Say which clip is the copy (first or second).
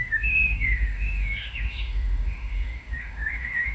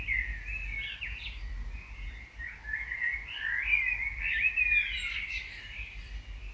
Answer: first